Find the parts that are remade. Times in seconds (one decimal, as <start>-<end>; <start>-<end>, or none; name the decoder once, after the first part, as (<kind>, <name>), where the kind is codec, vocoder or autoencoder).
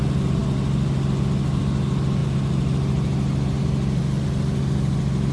none